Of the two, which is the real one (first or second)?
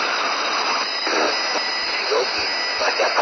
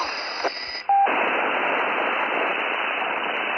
first